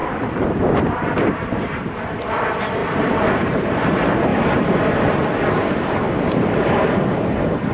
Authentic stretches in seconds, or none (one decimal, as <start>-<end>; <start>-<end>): 4.3-6.3